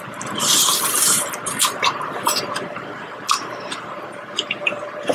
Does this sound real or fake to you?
fake